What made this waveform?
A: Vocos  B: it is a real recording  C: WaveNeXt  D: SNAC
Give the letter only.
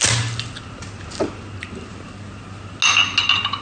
B